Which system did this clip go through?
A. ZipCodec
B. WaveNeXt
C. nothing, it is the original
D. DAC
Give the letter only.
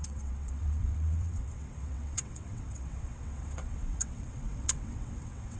B